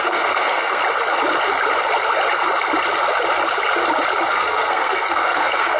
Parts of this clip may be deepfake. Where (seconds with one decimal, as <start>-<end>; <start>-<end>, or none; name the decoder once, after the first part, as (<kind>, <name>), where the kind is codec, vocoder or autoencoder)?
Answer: 0.0-0.8 (codec, SNAC); 4.3-5.8